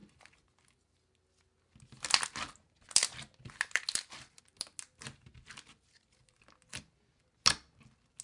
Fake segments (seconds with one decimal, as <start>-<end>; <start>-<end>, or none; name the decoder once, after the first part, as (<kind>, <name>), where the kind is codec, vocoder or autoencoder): none